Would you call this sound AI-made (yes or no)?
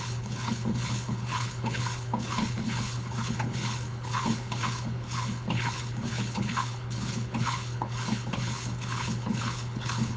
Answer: yes